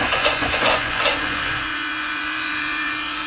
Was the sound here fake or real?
fake